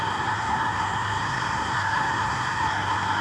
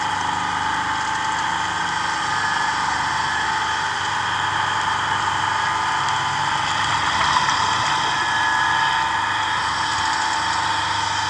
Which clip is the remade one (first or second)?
first